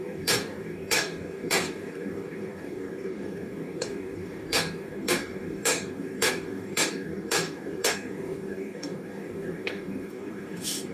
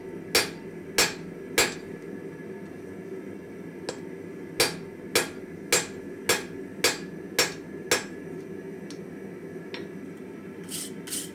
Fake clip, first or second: first